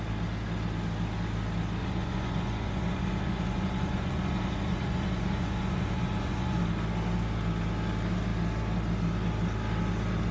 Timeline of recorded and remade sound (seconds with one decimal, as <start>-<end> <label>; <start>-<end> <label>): 0.0-1.8 recorded; 1.8-6.6 remade; 6.6-10.3 recorded